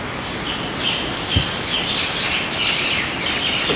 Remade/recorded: recorded